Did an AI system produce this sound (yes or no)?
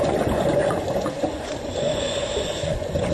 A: yes